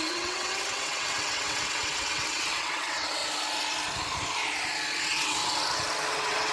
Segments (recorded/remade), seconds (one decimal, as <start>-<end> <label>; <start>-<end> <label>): 0.0-3.2 remade; 3.2-5.0 recorded; 5.0-5.4 remade; 5.4-6.1 recorded; 6.1-6.5 remade